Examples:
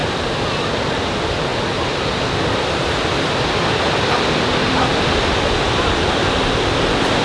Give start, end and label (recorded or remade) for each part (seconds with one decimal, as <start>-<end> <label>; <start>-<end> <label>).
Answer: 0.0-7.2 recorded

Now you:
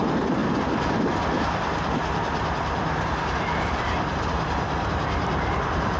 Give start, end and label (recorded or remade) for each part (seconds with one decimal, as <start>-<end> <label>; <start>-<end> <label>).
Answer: 0.0-0.4 remade; 0.4-3.6 recorded; 3.6-6.0 remade

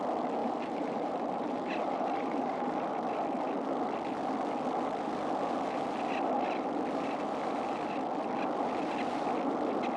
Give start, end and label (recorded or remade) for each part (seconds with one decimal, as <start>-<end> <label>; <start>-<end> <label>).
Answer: 0.0-0.4 recorded; 0.4-2.9 remade; 2.9-10.0 recorded